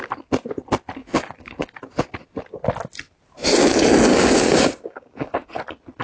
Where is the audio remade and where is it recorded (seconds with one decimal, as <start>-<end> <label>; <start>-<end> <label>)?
0.0-1.0 recorded; 1.0-2.0 remade; 2.0-4.1 recorded; 4.1-5.5 remade; 5.5-6.0 recorded